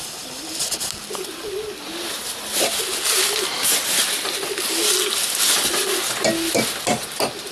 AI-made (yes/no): no